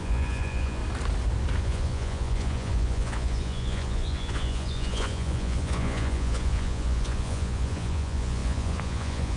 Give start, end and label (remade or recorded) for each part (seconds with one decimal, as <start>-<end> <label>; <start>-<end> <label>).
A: 0.0-0.8 remade; 0.8-1.6 recorded; 1.6-9.4 remade